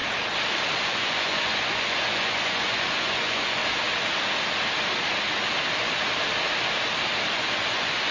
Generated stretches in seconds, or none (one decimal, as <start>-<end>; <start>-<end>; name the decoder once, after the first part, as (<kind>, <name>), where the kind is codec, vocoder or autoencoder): 0.8-3.6 (vocoder, Vocos); 7.3-8.1